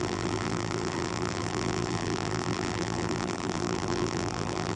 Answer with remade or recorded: remade